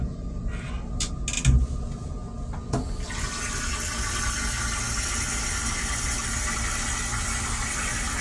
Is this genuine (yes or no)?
yes